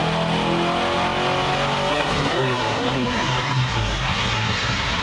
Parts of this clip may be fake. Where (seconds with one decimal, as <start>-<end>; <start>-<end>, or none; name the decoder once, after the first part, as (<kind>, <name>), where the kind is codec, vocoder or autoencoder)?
1.9-5.0 (codec, SNAC)